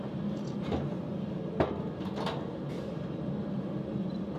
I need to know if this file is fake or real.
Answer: real